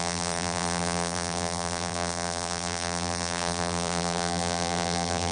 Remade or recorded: remade